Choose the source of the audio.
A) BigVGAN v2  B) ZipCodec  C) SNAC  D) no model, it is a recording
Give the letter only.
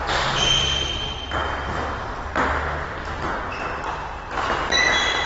D